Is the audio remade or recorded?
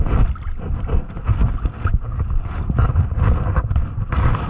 recorded